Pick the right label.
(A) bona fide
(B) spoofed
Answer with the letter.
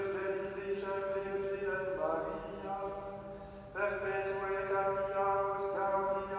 A